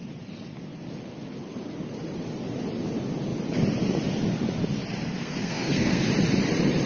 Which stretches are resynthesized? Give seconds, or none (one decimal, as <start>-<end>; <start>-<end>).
5.2-6.0